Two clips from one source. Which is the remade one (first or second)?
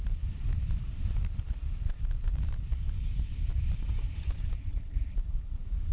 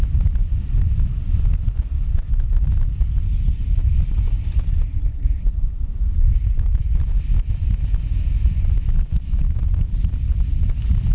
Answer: first